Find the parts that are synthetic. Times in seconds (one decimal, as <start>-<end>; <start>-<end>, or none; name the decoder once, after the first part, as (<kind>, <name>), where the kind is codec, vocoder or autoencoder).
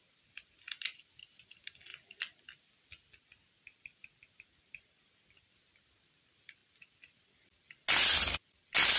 none